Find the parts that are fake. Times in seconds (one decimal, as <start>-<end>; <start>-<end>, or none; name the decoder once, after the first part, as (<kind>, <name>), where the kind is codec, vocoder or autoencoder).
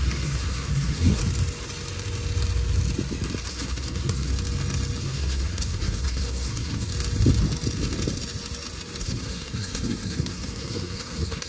0.0-1.2 (codec, SNAC); 3.5-4.3; 5.0-6.9; 9.0-11.5